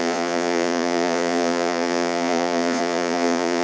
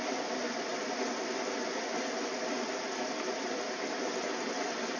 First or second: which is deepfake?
first